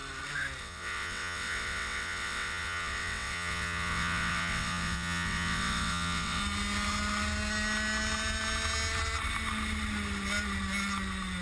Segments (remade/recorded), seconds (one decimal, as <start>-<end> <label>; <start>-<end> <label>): 0.0-0.6 recorded; 0.6-6.4 remade; 6.4-11.4 recorded